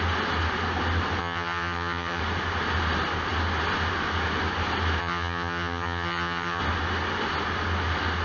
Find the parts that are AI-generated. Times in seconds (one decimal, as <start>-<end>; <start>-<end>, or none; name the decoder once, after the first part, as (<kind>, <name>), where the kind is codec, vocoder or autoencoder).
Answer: 1.2-2.2 (vocoder, HiFi-GAN); 5.0-6.6